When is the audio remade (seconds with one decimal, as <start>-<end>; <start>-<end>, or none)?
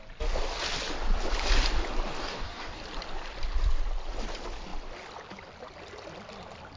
2.2-2.8